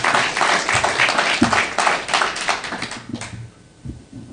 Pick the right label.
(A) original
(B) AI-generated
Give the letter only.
A